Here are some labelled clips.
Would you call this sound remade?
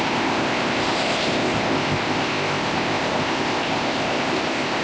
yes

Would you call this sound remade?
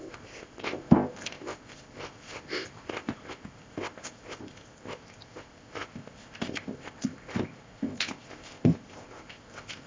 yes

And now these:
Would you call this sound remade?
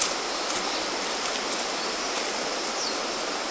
no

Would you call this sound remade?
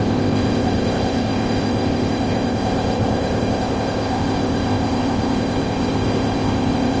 yes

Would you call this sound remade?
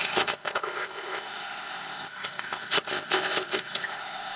yes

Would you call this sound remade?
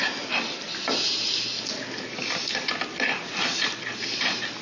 no